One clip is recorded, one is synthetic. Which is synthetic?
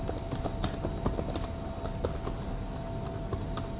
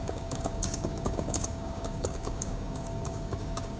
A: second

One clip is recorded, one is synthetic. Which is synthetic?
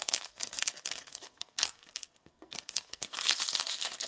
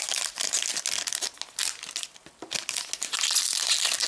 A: first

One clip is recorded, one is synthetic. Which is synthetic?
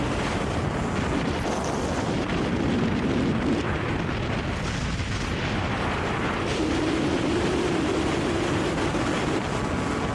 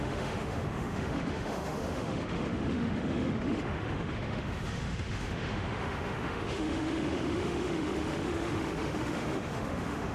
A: second